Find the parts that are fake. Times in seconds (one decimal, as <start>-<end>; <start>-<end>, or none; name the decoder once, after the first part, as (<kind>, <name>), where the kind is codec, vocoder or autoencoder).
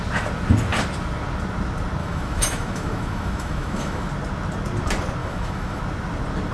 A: 2.0-4.1 (autoencoder, DAC-VAE); 5.2-5.8